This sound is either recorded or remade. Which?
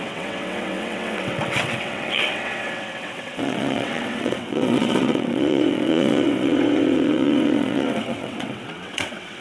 remade